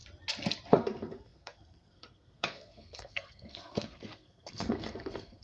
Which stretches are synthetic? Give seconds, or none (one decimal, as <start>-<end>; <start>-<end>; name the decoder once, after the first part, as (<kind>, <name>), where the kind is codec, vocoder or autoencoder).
0.7-5.4 (codec, SNAC)

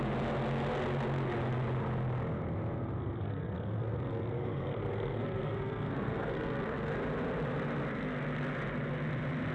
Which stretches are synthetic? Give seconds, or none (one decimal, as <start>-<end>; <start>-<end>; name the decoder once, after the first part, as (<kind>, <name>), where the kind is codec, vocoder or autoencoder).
3.0-6.9 (codec, SNAC)